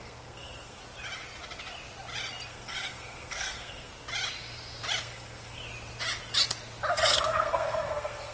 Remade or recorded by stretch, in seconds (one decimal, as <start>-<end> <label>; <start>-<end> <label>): 0.0-0.8 remade; 0.8-2.5 recorded; 2.5-3.9 remade; 3.9-5.0 recorded; 5.0-5.6 remade; 5.6-6.9 recorded; 6.9-8.3 remade